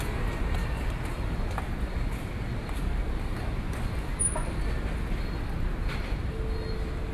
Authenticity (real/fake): real